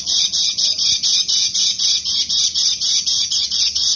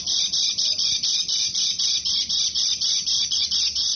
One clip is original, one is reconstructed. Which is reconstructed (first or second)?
first